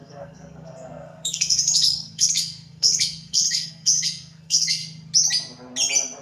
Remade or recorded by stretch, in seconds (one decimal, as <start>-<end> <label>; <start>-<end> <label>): 0.0-4.8 remade; 4.8-6.2 recorded

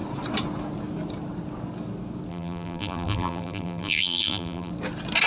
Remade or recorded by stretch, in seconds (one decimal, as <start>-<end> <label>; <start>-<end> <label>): 0.0-2.3 recorded; 2.3-4.7 remade; 4.7-5.3 recorded

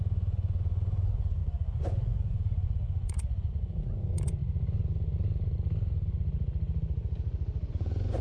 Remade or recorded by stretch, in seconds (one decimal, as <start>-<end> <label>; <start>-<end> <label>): 0.0-4.4 remade; 4.4-7.7 recorded; 7.7-8.2 remade

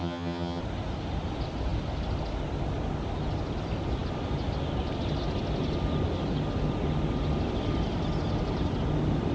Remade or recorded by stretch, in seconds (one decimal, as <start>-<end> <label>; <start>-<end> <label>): 0.0-0.6 remade; 0.6-9.3 recorded

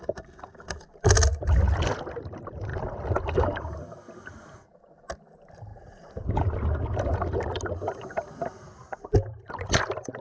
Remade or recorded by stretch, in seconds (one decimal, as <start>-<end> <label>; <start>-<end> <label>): 0.0-10.2 recorded